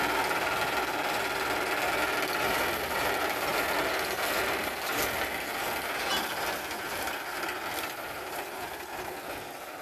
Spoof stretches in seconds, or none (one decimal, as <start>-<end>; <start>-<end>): none